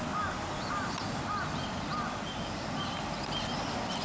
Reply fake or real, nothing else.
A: real